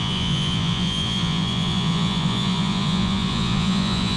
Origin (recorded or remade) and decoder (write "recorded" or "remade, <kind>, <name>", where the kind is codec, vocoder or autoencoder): remade, vocoder, Vocos